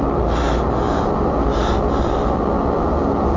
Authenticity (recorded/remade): recorded